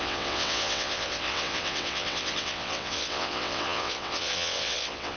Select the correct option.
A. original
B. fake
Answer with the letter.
B